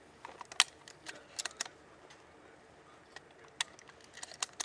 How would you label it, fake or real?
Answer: real